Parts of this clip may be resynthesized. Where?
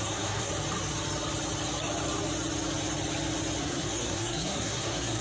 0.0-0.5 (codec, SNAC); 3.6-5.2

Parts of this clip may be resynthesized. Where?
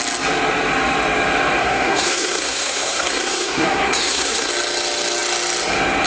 1.6-4.5 (codec, SNAC)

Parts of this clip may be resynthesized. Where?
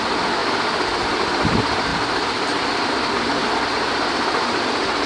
none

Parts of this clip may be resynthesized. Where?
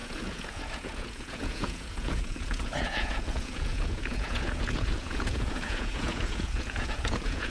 0.0-7.5 (vocoder, Vocos)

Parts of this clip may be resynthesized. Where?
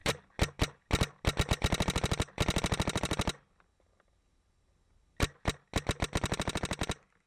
none